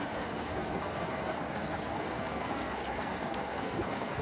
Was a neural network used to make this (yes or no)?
yes